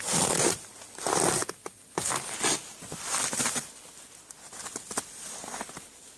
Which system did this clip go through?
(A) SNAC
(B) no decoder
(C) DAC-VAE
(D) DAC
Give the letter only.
B